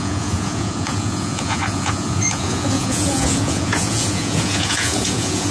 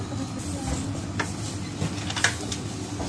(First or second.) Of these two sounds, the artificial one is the first